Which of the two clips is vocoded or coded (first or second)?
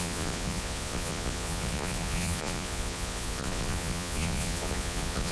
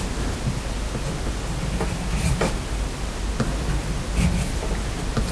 first